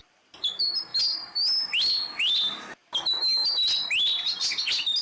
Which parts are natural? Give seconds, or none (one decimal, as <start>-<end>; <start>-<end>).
0.0-5.0